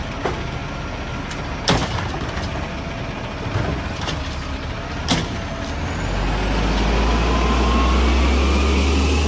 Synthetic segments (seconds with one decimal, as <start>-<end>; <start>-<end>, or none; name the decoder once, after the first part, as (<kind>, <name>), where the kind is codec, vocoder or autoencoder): none